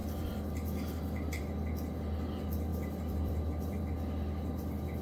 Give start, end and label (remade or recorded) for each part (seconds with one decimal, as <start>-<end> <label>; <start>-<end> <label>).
0.0-1.4 remade; 1.4-2.7 recorded; 2.7-3.8 remade; 3.8-5.0 recorded